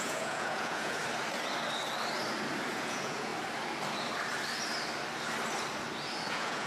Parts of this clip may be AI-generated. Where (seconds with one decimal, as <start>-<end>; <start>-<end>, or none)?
0.0-1.0; 2.7-3.3; 6.3-6.7